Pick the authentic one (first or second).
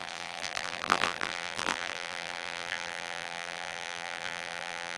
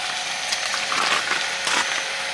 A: second